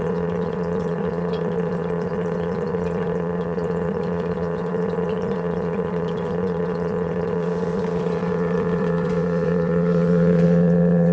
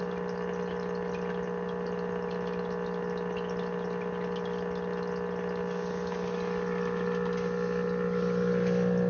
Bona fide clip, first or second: second